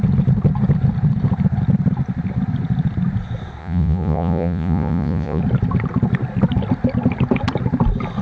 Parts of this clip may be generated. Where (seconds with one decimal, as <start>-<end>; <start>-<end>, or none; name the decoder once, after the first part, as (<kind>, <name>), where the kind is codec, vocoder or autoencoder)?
3.6-5.4 (vocoder, Vocos)